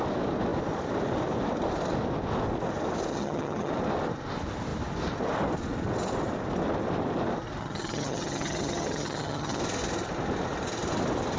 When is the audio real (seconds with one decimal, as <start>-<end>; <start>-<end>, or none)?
0.0-3.1; 3.7-7.6; 9.6-11.4